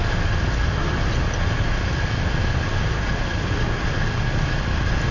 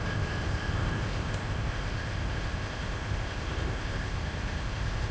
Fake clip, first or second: second